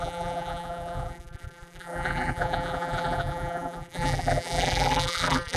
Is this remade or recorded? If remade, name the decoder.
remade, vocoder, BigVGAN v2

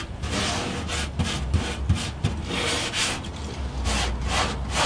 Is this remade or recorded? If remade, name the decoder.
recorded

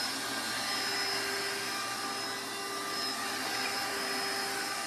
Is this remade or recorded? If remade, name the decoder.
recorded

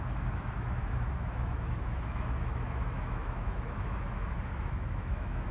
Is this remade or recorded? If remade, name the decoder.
remade, autoencoder, DAC-VAE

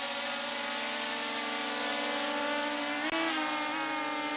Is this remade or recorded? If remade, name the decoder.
recorded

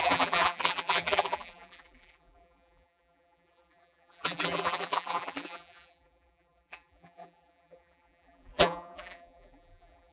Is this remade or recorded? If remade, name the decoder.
remade, vocoder, BigVGAN v2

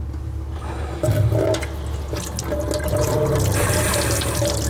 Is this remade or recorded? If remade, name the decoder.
recorded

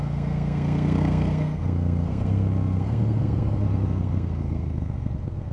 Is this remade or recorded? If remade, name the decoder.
remade, codec, SNAC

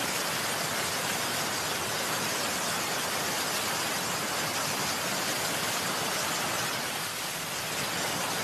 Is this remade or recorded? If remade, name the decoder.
recorded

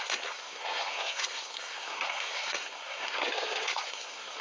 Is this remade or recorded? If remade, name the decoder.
remade, codec, SNAC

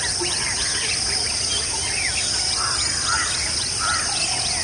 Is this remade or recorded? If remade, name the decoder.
recorded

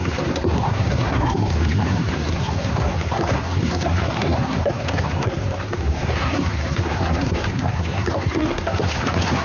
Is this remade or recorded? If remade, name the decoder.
remade, codec, SNAC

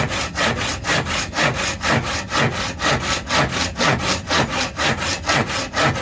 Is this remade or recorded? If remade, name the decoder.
recorded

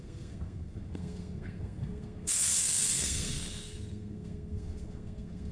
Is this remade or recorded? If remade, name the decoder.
remade, codec, SNAC